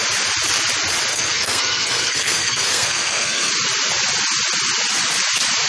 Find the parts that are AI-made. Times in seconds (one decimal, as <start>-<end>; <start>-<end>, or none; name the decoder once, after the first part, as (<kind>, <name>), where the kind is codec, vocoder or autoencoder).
1.1-3.5 (codec, SNAC)